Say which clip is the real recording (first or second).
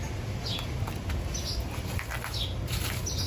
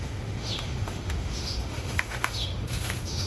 first